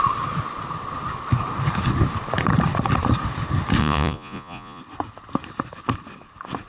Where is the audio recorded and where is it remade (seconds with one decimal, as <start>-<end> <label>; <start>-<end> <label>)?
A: 0.0-3.8 recorded; 3.8-4.8 remade; 4.8-6.7 recorded